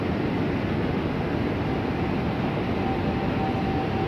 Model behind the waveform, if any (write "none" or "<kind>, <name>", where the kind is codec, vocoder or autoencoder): none